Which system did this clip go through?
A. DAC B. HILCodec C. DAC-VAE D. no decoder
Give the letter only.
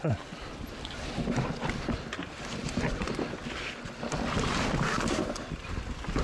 D